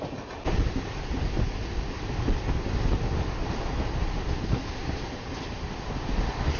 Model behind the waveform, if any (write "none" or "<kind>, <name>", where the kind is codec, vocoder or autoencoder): none